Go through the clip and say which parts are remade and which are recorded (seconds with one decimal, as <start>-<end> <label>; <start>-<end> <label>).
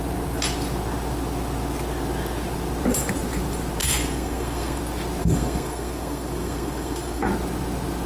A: 0.0-3.8 recorded; 3.8-4.8 remade; 4.8-5.2 recorded; 5.2-7.3 remade; 7.3-8.1 recorded